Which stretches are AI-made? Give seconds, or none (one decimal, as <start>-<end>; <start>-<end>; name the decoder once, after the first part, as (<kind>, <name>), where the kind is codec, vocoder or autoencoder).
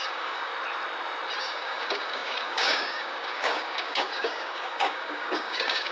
0.0-0.5 (codec, DAC); 1.4-5.9